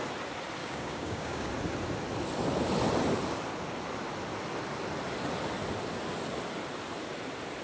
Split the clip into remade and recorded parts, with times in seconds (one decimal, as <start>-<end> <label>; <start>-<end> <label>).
0.0-0.6 recorded; 0.6-1.5 remade; 1.5-7.6 recorded